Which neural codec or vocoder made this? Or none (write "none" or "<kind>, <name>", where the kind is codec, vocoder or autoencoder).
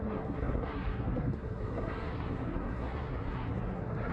codec, SNAC